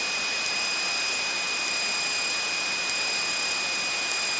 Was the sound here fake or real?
real